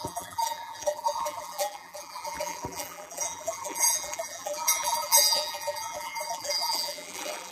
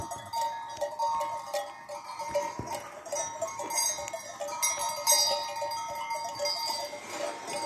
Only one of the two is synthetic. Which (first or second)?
first